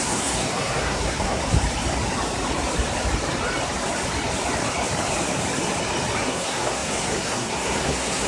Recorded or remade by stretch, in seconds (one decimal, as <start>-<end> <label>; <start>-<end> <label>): 0.0-1.4 remade; 1.4-6.2 recorded; 6.2-8.3 remade